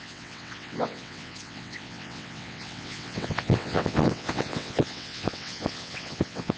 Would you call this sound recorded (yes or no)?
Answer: no